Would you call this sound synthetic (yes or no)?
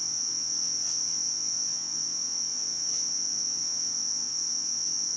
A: yes